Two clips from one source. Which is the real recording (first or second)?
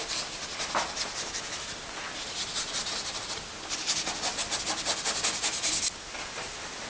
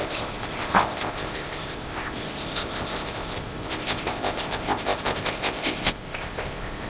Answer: first